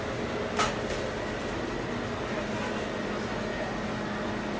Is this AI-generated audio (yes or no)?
no